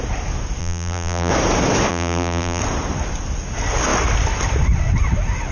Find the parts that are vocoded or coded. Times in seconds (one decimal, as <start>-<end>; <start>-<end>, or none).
0.6-1.3; 1.9-2.6